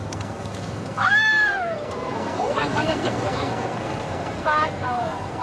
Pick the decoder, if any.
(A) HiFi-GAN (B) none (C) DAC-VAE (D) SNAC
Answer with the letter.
D